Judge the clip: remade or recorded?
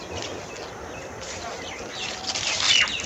recorded